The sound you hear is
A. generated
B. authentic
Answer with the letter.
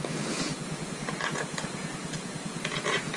A